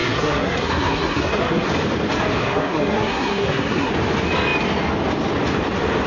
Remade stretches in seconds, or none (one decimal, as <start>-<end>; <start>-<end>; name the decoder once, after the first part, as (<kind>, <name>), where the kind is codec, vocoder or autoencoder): 0.0-1.7 (codec, SNAC); 2.4-3.9